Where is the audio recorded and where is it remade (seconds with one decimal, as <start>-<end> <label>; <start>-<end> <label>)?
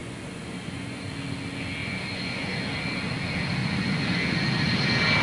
0.0-1.1 remade; 1.1-1.8 recorded; 1.8-2.5 remade; 2.5-3.6 recorded; 3.6-4.2 remade; 4.2-5.2 recorded